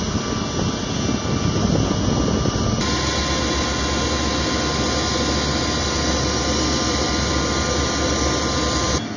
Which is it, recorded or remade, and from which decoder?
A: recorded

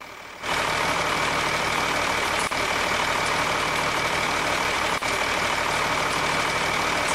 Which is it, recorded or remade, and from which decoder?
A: remade, vocoder, BigVGAN v2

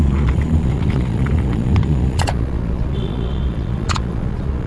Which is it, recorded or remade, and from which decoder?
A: remade, vocoder, Vocos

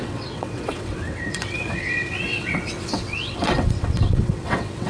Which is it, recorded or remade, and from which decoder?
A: remade, vocoder, WaveNeXt